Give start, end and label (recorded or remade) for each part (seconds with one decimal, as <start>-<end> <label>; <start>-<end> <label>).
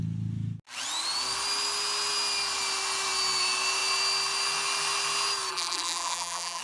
0.0-5.5 recorded; 5.5-6.6 remade